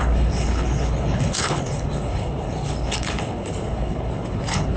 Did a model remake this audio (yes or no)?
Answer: yes